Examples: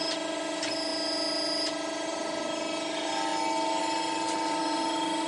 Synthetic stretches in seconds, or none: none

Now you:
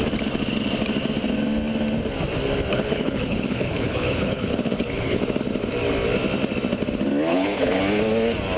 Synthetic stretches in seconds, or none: 2.7-5.2 (codec, HILCodec); 7.3-7.8